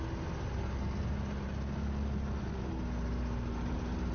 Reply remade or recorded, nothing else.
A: recorded